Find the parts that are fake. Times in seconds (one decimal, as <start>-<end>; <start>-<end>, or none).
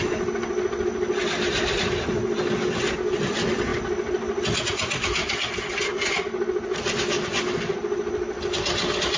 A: none